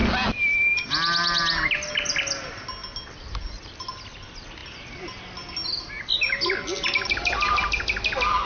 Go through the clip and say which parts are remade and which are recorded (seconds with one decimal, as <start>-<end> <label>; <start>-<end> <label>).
0.0-8.5 recorded

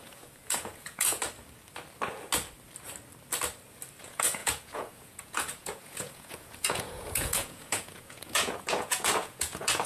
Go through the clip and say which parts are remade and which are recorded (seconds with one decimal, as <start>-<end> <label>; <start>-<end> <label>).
0.0-1.2 remade; 1.2-4.0 recorded; 4.0-9.9 remade

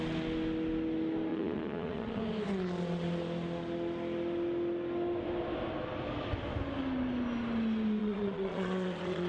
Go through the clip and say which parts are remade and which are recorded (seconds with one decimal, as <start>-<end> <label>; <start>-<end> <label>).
0.0-1.3 recorded; 1.3-2.2 remade; 2.2-8.0 recorded; 8.0-9.3 remade

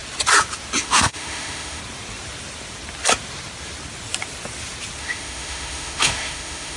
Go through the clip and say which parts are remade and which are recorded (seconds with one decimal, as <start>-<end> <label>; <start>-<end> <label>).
0.0-0.8 recorded; 0.8-1.8 remade; 1.8-5.0 recorded; 5.0-6.8 remade

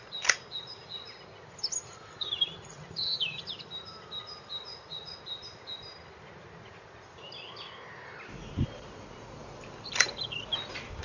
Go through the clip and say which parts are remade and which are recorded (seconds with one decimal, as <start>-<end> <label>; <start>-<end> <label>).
0.0-4.7 recorded; 4.7-5.2 remade; 5.2-11.0 recorded

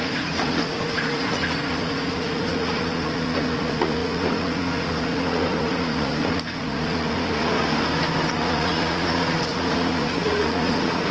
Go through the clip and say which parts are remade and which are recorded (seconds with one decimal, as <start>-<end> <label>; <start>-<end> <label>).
0.0-7.7 remade; 7.7-8.3 recorded; 8.3-11.1 remade